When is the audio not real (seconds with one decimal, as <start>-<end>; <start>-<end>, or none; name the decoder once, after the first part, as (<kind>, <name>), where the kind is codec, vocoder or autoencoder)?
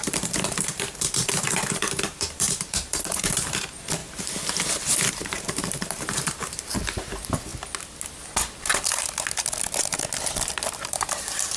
0.0-4.0 (vocoder, BigVGAN v2); 5.1-7.5; 10.7-11.6